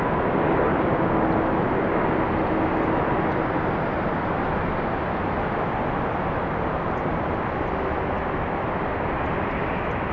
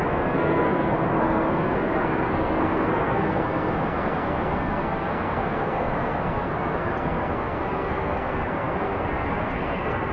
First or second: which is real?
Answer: first